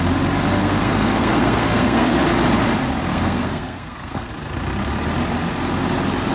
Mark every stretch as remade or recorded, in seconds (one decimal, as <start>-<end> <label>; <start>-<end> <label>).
0.0-0.6 recorded; 0.6-2.2 remade; 2.2-3.1 recorded; 3.1-4.3 remade; 4.3-6.3 recorded